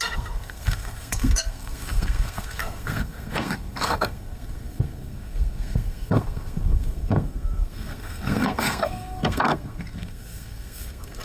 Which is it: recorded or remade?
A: remade